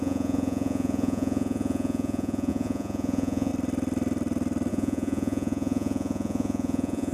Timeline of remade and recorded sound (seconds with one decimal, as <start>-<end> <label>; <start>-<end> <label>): 0.0-3.5 remade; 3.5-4.7 recorded; 4.7-7.1 remade